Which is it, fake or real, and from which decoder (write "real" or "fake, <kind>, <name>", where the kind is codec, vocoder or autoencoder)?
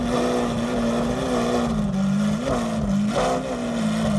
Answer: real